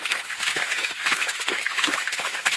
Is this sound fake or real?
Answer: fake